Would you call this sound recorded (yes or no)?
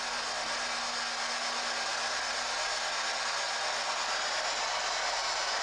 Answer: yes